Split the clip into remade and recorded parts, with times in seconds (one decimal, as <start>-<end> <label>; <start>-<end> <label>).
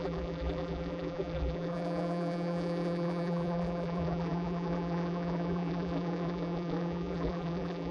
0.0-7.9 remade